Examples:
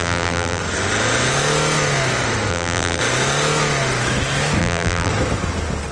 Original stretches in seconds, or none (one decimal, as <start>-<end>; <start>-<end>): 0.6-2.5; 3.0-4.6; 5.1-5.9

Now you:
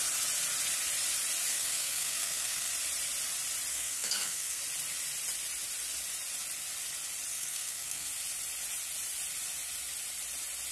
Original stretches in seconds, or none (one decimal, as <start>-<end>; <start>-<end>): 0.0-1.5; 2.7-3.7; 4.6-7.3; 8.1-10.7

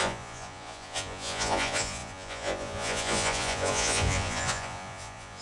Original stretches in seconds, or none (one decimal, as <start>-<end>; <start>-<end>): none

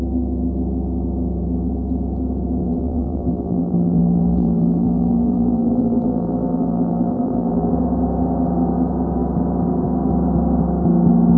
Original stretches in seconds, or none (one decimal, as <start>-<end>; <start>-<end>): 0.0-2.6; 7.7-11.4